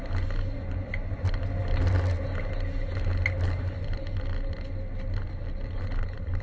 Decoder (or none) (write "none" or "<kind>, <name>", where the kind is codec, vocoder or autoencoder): none